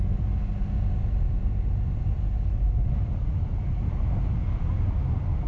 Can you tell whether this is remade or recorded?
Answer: recorded